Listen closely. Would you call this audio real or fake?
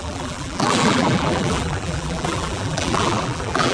fake